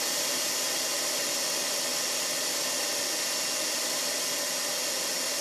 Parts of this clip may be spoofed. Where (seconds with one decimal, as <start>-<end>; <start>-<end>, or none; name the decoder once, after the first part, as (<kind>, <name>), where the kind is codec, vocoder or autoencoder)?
none